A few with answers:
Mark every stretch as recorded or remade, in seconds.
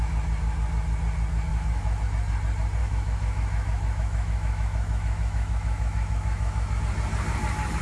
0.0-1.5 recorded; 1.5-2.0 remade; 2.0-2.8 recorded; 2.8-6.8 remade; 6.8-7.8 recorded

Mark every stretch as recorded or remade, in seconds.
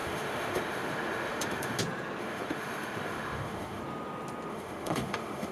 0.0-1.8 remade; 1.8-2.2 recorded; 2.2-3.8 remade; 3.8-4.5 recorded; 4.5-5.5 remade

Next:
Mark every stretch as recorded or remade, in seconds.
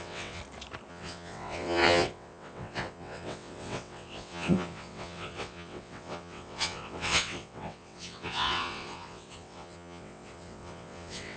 0.0-0.4 remade; 0.4-0.9 recorded; 0.9-11.4 remade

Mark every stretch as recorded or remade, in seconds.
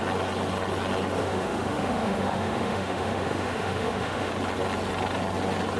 0.0-1.2 recorded; 1.2-4.3 remade; 4.3-5.8 recorded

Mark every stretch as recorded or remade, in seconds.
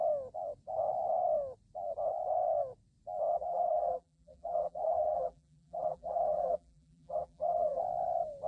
0.0-3.3 recorded; 3.3-7.8 remade; 7.8-8.5 recorded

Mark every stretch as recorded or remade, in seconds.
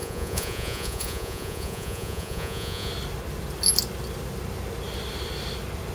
0.0-2.9 remade; 2.9-5.9 recorded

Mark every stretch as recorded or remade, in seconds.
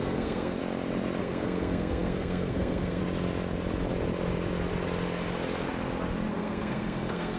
0.0-0.6 remade; 0.6-1.2 recorded; 1.2-3.0 remade; 3.0-6.3 recorded; 6.3-7.4 remade